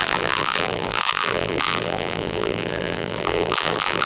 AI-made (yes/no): yes